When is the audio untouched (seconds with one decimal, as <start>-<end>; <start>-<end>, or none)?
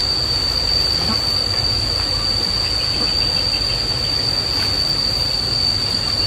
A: 0.0-6.3